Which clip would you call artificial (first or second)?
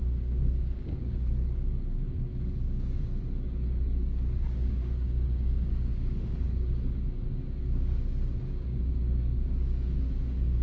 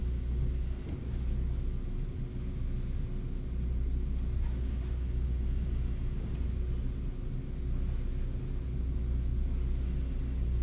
first